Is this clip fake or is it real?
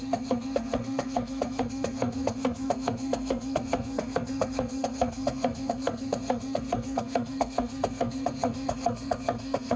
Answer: fake